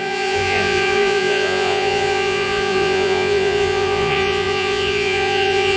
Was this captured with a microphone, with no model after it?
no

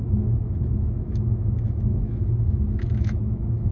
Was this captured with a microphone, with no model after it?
no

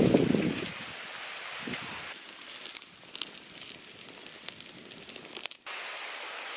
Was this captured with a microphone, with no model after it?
yes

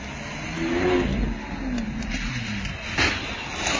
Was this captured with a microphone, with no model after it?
yes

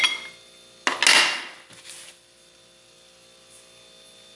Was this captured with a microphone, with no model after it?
yes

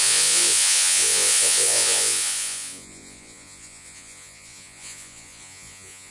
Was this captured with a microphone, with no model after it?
no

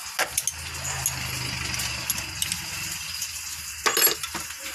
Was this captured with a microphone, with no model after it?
yes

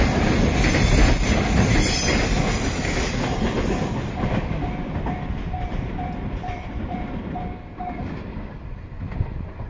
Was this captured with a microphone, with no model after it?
no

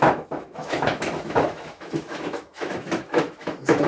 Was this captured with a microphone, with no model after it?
no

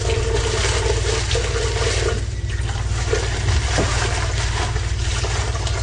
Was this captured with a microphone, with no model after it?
yes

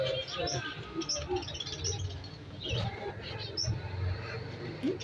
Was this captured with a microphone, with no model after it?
yes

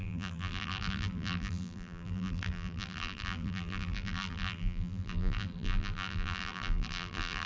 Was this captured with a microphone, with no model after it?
no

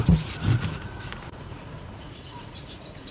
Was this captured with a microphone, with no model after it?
no